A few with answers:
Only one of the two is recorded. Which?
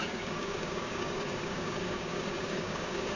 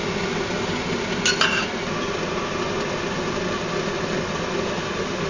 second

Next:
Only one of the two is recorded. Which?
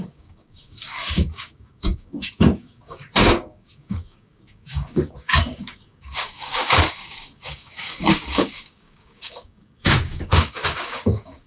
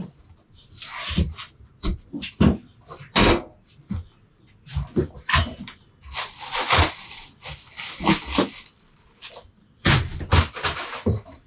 second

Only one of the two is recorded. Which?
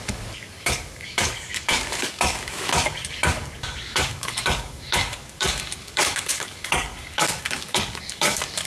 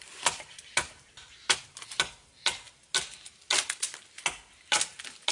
second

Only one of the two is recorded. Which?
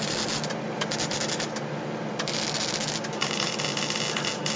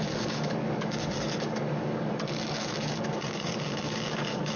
first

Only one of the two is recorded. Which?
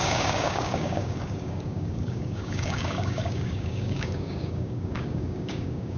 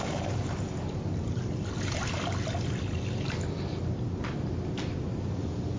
second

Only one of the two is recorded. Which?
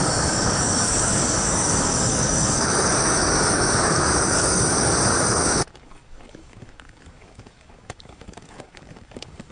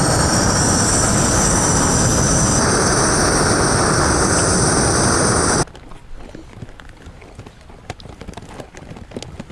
second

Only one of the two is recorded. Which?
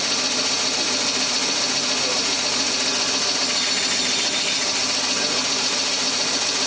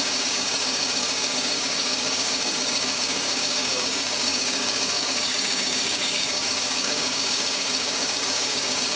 first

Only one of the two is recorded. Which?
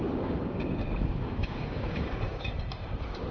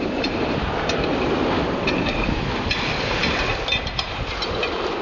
second